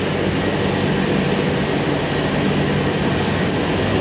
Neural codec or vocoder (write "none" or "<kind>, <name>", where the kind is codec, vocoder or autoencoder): none